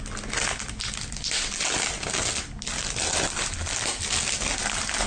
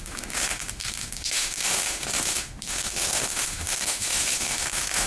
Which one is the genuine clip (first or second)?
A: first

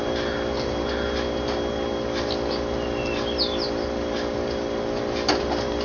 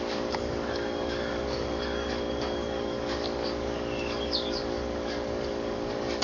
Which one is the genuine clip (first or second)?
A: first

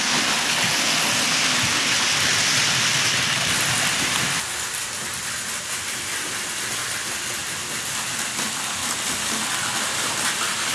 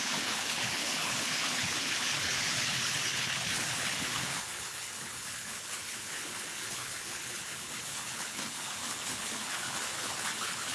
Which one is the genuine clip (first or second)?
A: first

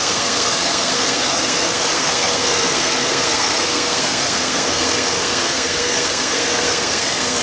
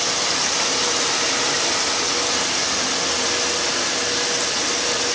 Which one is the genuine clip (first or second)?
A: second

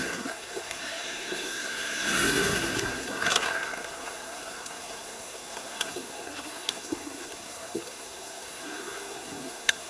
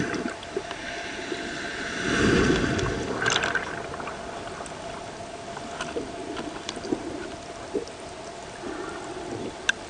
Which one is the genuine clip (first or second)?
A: second